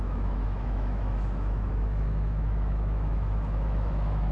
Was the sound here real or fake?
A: fake